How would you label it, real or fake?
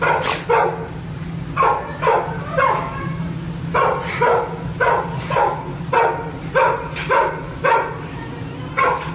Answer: real